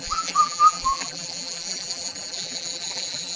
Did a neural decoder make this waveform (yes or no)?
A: yes